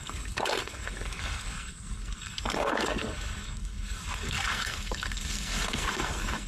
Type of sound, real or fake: fake